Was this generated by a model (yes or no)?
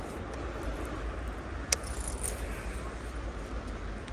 no